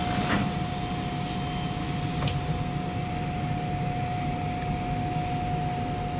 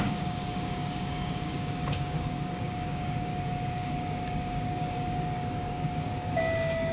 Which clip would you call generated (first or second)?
second